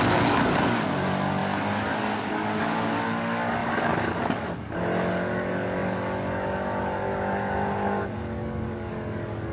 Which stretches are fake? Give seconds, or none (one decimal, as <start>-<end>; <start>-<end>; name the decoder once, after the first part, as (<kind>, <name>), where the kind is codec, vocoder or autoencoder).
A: 0.0-9.5 (codec, DAC)